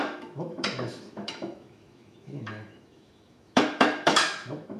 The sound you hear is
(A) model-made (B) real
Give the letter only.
A